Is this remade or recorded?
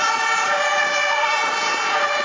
recorded